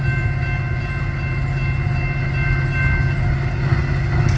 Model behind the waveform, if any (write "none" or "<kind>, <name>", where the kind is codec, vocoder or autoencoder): none